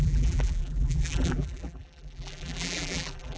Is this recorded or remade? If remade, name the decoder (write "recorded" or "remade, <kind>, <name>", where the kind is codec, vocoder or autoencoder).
remade, vocoder, BigVGAN v2